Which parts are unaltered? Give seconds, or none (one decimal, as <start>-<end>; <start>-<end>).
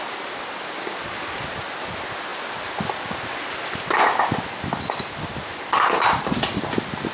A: 0.0-7.1